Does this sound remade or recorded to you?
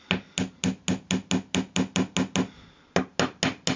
recorded